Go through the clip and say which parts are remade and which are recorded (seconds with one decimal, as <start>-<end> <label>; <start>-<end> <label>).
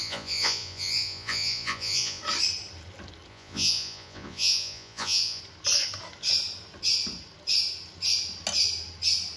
0.0-2.2 remade; 2.2-3.3 recorded; 3.3-5.4 remade; 5.4-9.4 recorded